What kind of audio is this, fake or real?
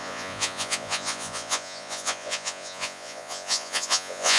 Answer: fake